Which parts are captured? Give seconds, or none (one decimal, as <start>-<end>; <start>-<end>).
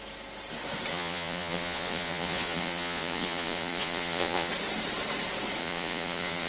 0.0-0.9; 4.5-5.6